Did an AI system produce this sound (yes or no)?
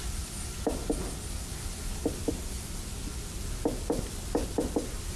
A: no